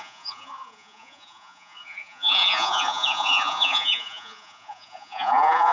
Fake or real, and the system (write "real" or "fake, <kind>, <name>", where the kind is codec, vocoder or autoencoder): fake, vocoder, Vocos